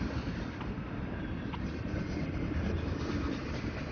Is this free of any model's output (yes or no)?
yes